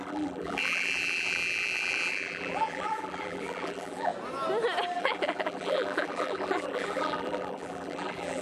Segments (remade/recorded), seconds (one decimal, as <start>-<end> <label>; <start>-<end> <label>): 0.0-4.1 remade; 4.1-5.0 recorded; 5.0-8.4 remade

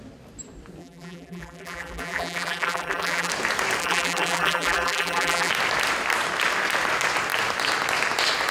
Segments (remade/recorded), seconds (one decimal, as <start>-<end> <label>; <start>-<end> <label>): 0.0-0.8 recorded; 0.8-3.3 remade; 3.3-3.8 recorded; 3.8-5.5 remade; 5.5-8.5 recorded

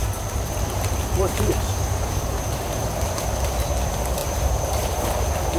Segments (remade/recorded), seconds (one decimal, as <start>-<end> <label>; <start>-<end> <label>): 0.0-3.4 remade; 3.4-4.2 recorded; 4.2-5.1 remade; 5.1-5.6 recorded